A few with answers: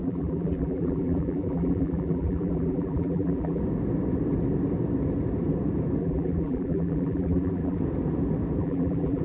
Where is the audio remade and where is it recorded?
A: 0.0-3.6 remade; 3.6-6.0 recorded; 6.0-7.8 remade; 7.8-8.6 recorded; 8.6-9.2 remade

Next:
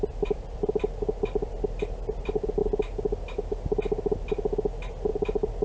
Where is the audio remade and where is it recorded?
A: 0.0-2.6 remade; 2.6-5.1 recorded; 5.1-5.6 remade